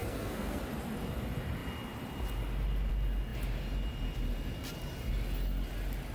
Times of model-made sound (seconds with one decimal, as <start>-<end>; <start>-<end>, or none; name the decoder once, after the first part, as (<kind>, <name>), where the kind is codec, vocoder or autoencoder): 0.0-0.6 (codec, SNAC)